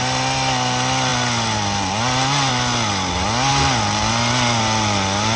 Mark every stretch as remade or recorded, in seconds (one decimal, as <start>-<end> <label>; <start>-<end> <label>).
0.0-5.4 recorded